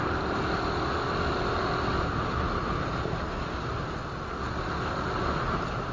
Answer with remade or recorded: recorded